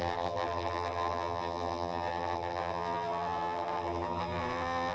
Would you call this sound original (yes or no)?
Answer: no